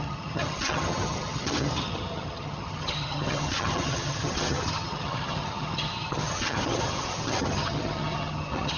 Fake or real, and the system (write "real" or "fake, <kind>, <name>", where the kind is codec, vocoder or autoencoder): fake, vocoder, HiFi-GAN